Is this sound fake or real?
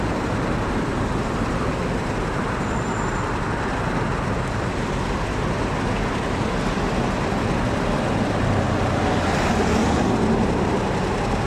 real